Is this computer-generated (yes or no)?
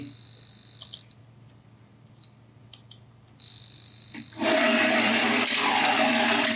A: no